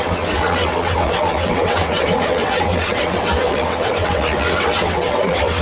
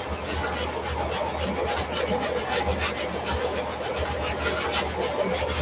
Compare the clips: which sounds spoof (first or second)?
first